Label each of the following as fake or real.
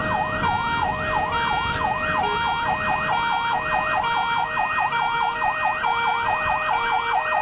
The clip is real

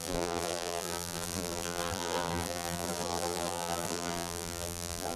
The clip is fake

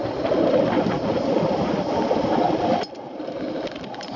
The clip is real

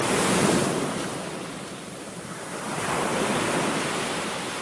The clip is fake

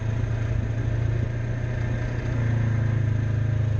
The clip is real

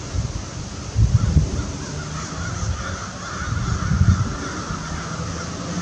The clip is real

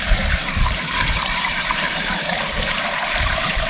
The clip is fake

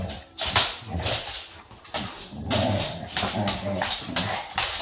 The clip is real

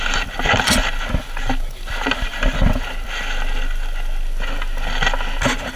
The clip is real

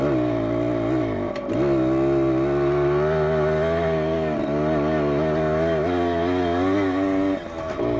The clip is real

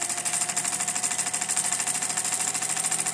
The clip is real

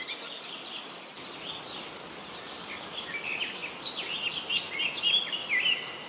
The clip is real